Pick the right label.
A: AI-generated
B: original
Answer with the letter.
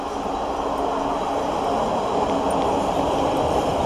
B